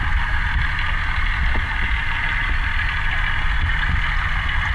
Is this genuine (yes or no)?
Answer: yes